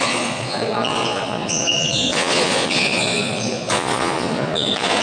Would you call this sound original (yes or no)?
no